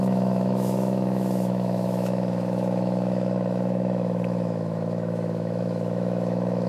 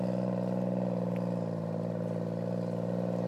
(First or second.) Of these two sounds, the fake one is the first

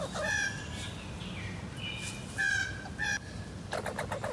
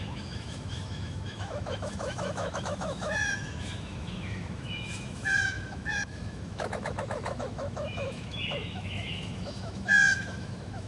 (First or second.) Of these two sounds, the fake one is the second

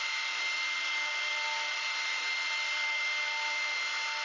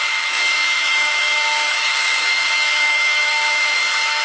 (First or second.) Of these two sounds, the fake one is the second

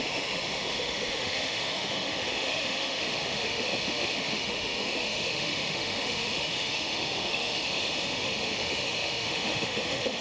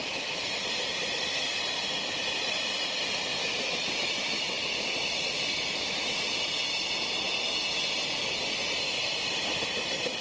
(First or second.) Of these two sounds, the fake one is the first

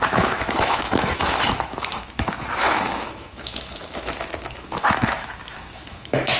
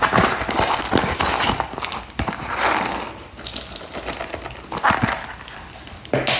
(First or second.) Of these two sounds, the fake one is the first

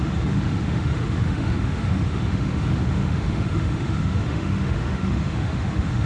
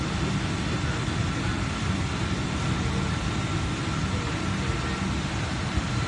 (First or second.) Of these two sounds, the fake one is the first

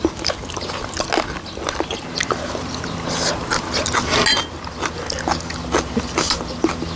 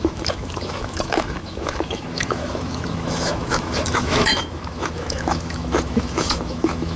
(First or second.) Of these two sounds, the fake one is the second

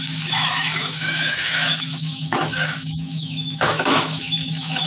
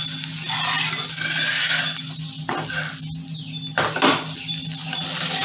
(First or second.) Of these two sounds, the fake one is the first